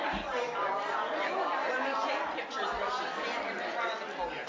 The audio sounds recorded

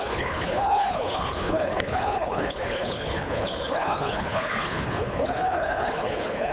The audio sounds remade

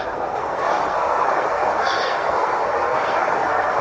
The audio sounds remade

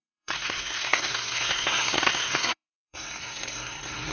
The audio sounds remade